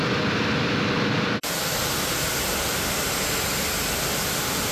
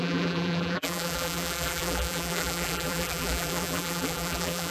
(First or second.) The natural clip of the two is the first